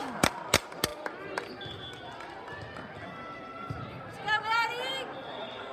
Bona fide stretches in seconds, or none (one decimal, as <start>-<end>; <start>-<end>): 0.0-4.1; 4.9-5.7